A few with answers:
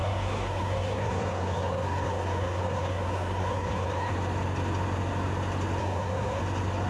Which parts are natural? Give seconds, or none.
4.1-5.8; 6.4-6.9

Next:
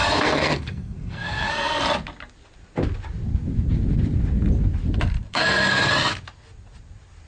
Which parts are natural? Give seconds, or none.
1.8-5.3; 5.9-7.3

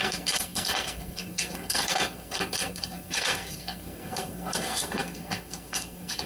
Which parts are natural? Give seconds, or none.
none

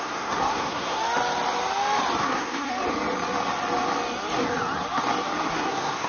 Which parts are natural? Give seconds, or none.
1.0-2.2; 2.7-5.5

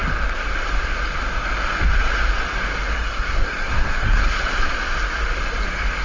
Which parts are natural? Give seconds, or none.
0.0-2.9; 4.4-6.0

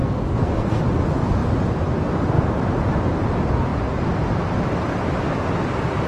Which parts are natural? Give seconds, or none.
0.8-6.1

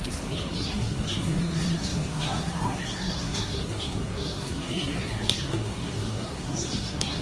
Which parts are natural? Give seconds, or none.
none

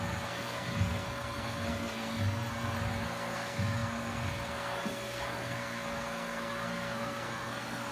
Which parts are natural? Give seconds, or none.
none